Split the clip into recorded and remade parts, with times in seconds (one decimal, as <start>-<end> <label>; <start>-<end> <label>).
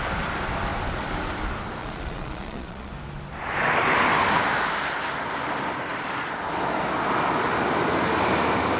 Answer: 0.0-1.8 recorded; 1.8-2.9 remade; 2.9-8.8 recorded